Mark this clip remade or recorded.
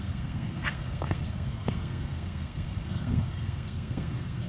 remade